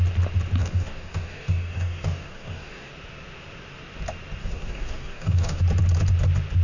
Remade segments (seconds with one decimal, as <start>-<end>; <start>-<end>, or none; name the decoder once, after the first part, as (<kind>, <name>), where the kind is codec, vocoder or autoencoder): 0.6-2.9 (codec, DAC); 4.4-5.6